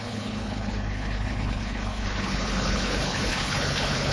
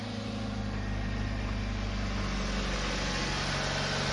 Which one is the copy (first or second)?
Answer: first